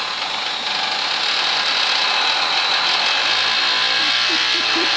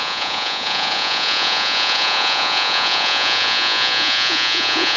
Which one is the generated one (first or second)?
second